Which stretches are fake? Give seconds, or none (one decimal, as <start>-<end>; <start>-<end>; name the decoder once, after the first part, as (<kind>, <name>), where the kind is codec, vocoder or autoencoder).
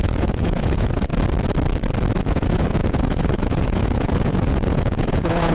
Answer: 0.0-1.1 (vocoder, Vocos); 2.2-5.5